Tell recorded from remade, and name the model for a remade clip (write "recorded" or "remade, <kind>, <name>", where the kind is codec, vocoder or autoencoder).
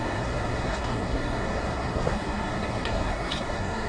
remade, codec, SNAC